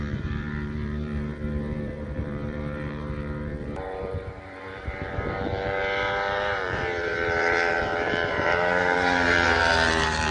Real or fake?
fake